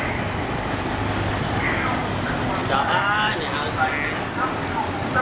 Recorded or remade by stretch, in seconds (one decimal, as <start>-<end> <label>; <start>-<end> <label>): 0.0-5.2 recorded